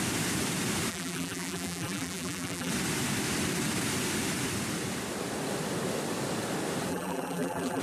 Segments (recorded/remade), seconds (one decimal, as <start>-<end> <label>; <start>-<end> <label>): 0.0-0.9 recorded; 0.9-2.7 remade; 2.7-6.9 recorded; 6.9-7.8 remade